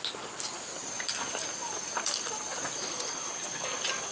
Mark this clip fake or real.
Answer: real